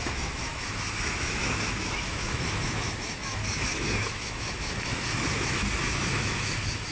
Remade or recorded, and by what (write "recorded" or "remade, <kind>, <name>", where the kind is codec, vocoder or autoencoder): remade, autoencoder, DAC-VAE